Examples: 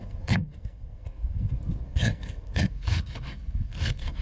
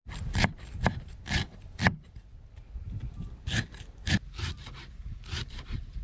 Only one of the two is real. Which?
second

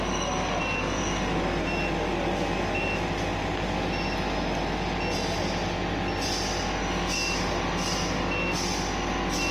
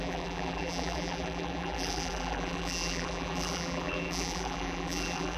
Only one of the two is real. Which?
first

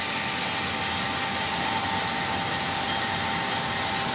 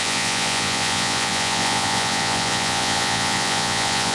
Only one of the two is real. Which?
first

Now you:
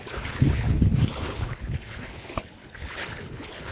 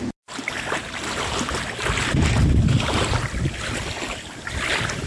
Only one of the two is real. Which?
second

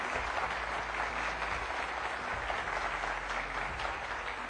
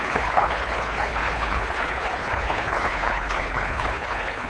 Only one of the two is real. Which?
first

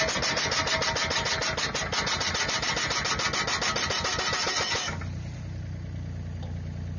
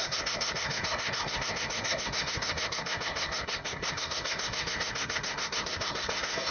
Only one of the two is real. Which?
first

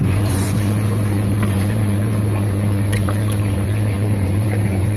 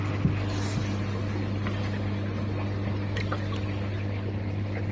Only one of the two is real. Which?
second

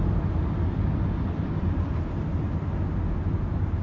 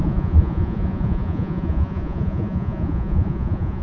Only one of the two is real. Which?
first